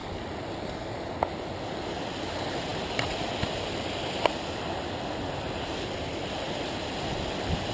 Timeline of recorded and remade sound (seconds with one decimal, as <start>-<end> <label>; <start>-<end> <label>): 0.0-7.7 recorded